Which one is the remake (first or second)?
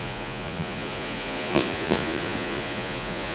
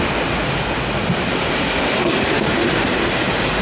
first